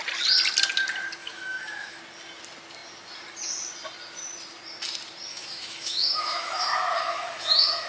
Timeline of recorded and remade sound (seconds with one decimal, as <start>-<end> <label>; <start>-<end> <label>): 0.0-1.2 recorded; 1.2-2.0 remade; 2.0-5.3 recorded; 5.3-7.9 remade